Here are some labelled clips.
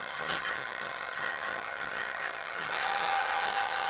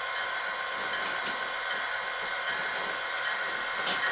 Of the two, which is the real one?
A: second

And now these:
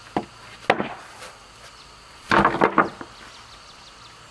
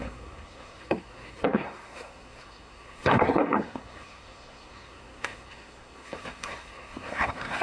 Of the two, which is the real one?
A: first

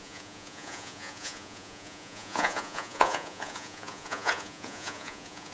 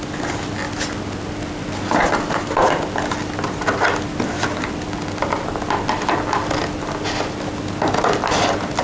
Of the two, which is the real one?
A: second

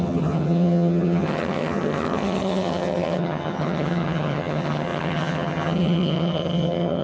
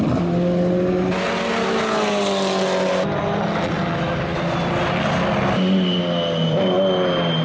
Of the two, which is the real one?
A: second